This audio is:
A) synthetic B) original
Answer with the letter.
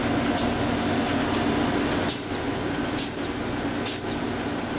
B